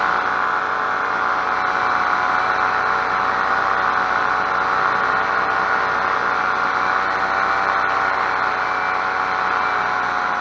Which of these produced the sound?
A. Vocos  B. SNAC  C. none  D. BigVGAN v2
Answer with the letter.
C